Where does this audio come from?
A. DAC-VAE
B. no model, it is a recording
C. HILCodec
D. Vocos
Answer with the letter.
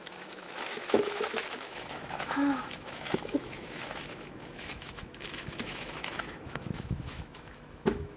A